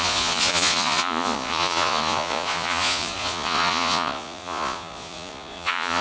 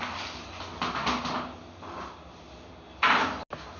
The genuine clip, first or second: second